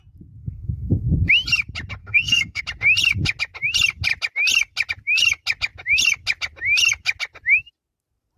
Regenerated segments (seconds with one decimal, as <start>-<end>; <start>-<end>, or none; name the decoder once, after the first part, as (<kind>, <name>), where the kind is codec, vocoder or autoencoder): 0.4-1.1 (codec, SNAC); 2.0-2.6